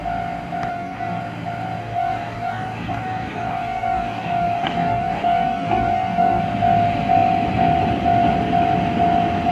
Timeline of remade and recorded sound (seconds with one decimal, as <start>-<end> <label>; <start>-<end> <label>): 0.0-0.7 recorded; 0.7-1.2 remade; 1.2-1.8 recorded; 1.8-6.4 remade; 6.4-9.5 recorded